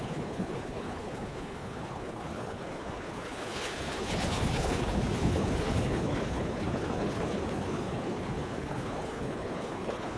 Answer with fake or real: fake